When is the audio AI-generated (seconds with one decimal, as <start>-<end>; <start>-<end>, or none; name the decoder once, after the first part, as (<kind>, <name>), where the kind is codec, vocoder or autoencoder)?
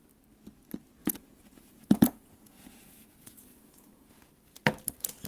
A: 1.0-4.2 (vocoder, Vocos)